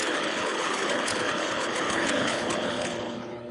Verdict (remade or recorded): remade